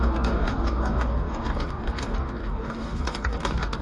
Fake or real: fake